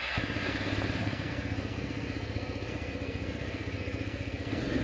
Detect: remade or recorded remade